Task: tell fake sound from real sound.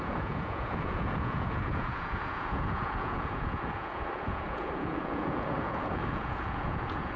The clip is fake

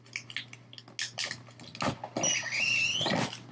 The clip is real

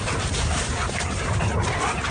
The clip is fake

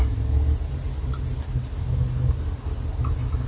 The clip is real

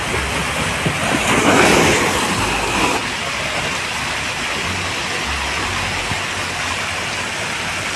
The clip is real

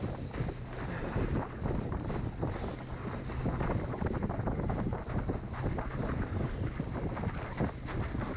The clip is real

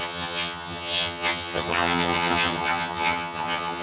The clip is fake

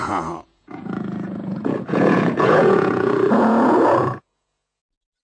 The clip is fake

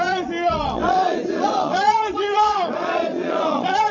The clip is fake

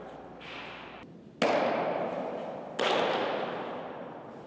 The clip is real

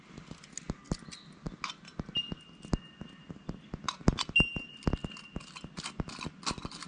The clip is real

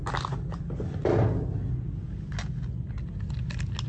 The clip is real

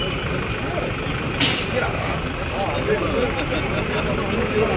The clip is real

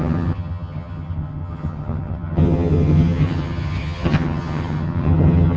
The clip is fake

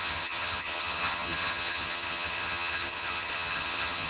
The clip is fake